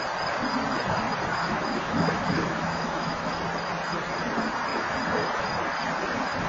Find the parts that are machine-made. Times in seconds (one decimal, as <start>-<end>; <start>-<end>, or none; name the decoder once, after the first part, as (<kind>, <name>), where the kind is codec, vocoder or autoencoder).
1.3-3.3 (autoencoder, DAC-VAE)